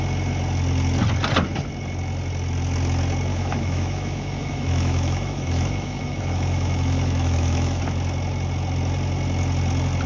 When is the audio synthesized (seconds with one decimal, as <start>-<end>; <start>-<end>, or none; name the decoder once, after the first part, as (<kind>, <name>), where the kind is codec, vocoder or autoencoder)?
3.3-7.8 (autoencoder, DAC-VAE)